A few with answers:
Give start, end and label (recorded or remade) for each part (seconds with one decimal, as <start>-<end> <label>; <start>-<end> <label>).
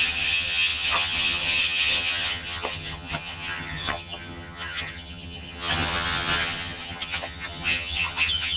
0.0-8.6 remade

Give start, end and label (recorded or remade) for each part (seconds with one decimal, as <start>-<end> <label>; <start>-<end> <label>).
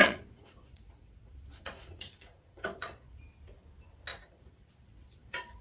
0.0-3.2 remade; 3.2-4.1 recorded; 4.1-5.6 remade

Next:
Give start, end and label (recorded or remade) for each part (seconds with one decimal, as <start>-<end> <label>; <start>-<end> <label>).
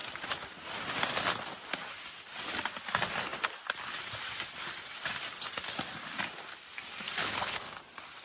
0.0-7.2 recorded; 7.2-7.7 remade; 7.7-8.2 recorded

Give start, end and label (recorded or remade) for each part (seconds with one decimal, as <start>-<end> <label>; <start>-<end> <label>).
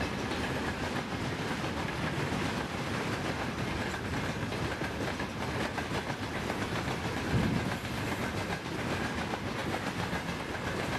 0.0-11.0 recorded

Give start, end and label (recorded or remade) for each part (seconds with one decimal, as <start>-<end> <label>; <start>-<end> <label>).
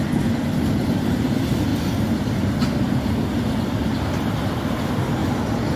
0.0-1.7 remade; 1.7-4.5 recorded; 4.5-5.2 remade; 5.2-5.8 recorded